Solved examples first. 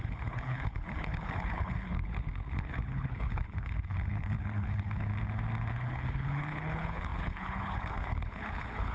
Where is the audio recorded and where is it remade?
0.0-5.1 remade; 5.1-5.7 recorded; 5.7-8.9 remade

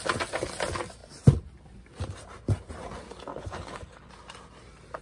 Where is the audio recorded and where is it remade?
0.0-3.3 recorded; 3.3-4.1 remade; 4.1-5.0 recorded

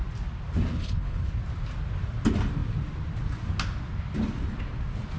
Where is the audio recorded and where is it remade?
0.0-0.7 recorded; 0.7-1.3 remade; 1.3-5.2 recorded

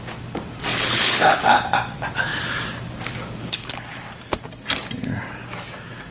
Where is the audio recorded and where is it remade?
0.0-0.7 recorded; 0.7-1.6 remade; 1.6-3.4 recorded; 3.4-4.0 remade; 4.0-6.1 recorded

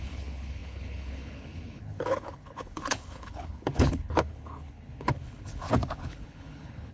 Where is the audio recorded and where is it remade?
0.0-6.9 remade

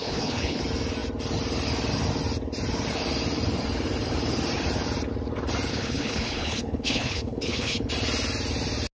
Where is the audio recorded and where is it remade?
0.0-0.6 remade; 0.6-5.7 recorded; 5.7-7.9 remade; 7.9-9.0 recorded

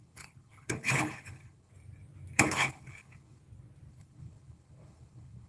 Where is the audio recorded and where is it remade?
0.0-1.7 remade; 1.7-2.4 recorded; 2.4-3.4 remade; 3.4-3.9 recorded; 3.9-5.5 remade